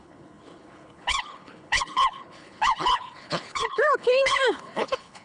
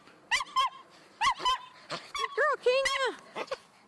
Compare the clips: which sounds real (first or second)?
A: second